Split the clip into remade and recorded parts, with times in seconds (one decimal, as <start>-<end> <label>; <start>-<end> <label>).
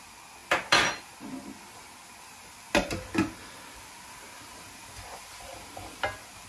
0.0-6.5 recorded